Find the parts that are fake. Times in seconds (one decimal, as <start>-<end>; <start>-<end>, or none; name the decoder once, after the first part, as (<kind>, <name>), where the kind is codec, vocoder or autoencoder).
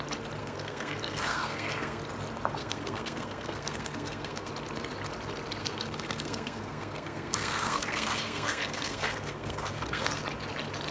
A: 0.4-2.0 (codec, SNAC); 2.6-4.5; 5.6-10.2